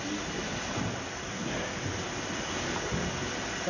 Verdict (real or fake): real